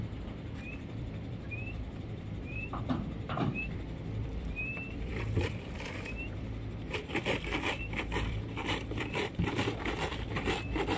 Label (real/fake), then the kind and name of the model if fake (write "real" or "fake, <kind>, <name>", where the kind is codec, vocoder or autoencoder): fake, vocoder, BigVGAN v2